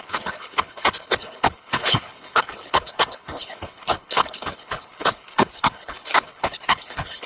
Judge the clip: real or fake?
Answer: fake